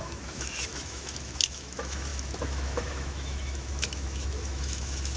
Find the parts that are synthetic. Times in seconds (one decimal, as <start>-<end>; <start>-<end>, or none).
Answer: 0.0-5.2